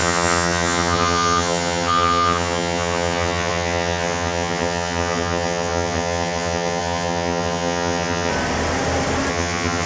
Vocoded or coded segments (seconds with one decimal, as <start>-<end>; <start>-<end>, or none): 0.0-8.3; 9.3-9.9